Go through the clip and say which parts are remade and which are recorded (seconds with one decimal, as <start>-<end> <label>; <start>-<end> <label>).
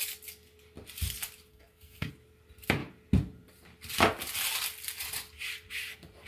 0.0-1.5 recorded; 1.5-2.1 remade; 2.1-6.3 recorded